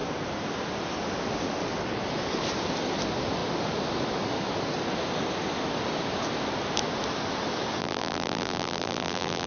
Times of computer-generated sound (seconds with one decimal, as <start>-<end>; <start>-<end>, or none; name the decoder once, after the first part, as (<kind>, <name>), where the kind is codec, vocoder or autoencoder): 7.8-9.5 (vocoder, BigVGAN v2)